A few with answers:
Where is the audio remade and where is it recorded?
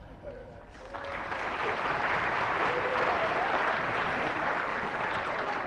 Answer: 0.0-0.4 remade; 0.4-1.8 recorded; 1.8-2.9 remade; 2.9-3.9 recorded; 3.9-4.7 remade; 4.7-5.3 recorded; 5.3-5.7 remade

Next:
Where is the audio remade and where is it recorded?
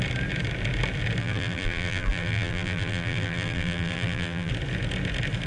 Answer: 0.0-1.2 recorded; 1.2-4.5 remade; 4.5-5.5 recorded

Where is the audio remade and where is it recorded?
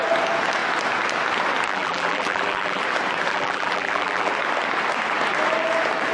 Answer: 0.0-1.7 recorded; 1.7-2.8 remade; 2.8-3.3 recorded; 3.3-4.3 remade; 4.3-6.1 recorded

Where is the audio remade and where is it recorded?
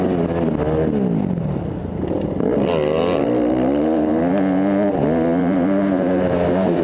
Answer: 0.0-5.4 recorded; 5.4-6.8 remade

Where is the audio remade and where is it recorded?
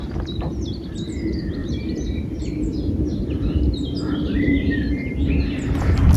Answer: 0.0-1.6 recorded; 1.6-5.2 remade; 5.2-6.2 recorded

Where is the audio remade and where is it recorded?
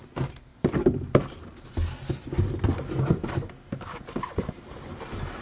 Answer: 0.0-5.4 recorded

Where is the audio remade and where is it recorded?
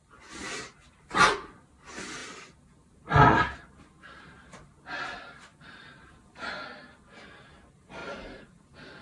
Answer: 0.0-5.5 recorded; 5.5-6.5 remade; 6.5-8.0 recorded; 8.0-9.0 remade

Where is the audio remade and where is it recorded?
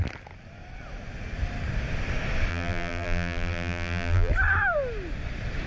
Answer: 0.0-2.5 recorded; 2.5-4.3 remade; 4.3-5.7 recorded